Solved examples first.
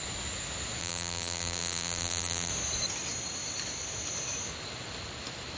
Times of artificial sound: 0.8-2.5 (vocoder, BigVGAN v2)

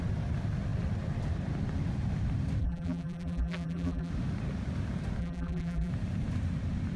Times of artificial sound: 2.6-4.1 (vocoder, BigVGAN v2); 5.2-5.9

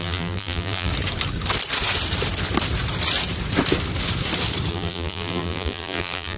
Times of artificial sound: 0.0-0.9 (vocoder, BigVGAN v2); 4.7-6.4

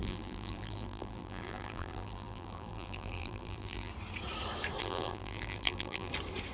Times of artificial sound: 0.0-3.9 (vocoder, BigVGAN v2); 4.8-6.1

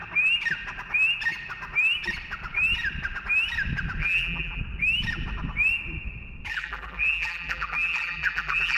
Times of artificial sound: 4.0-4.6 (vocoder, BigVGAN v2); 6.5-8.8

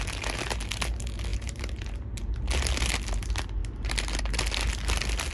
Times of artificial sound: 1.3-2.3 (vocoder, BigVGAN v2)

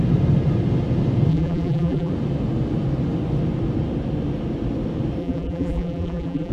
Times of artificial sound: 1.3-2.1 (vocoder, BigVGAN v2); 5.2-6.5